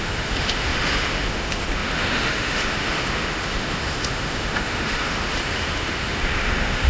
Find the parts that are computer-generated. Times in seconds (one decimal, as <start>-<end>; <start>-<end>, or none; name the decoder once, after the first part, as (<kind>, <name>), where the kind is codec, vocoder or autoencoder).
0.0-6.9 (autoencoder, DAC-VAE)